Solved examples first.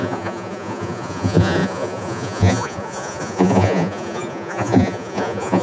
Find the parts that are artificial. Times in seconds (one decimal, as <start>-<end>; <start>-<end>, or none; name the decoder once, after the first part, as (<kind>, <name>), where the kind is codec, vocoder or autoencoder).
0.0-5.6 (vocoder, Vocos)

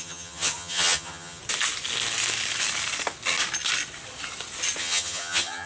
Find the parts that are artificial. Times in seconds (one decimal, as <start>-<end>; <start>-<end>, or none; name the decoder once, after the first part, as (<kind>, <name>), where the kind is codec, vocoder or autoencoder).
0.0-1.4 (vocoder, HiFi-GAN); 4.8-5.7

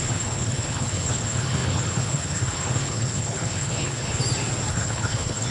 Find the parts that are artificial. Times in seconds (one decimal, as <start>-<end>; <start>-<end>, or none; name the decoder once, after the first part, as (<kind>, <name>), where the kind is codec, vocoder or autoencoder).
0.0-4.2 (codec, HILCodec); 4.7-5.5

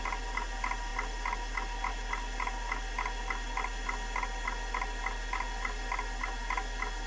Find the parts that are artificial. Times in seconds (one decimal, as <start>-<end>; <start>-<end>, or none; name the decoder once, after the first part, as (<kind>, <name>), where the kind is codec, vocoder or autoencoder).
none